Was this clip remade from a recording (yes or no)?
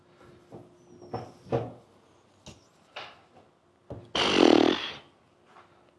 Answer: no